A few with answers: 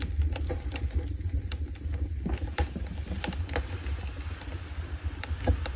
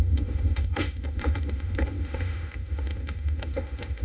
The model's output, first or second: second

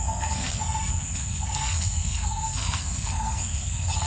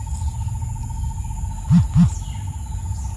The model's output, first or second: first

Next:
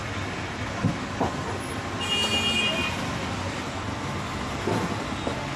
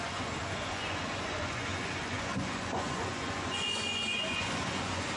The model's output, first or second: second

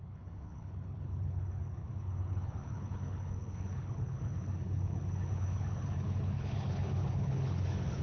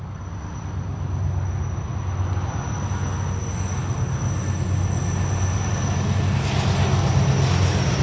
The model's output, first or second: first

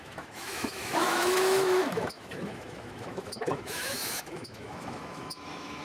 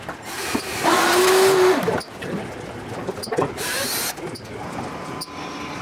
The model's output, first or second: first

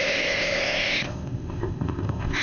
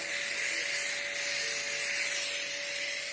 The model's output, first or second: first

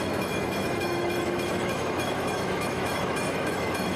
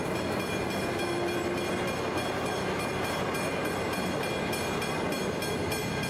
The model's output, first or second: first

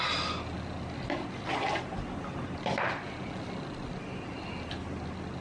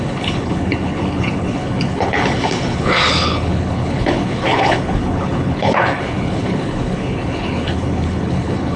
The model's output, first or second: second